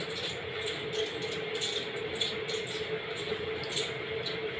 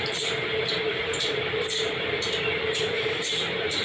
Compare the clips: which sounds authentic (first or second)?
first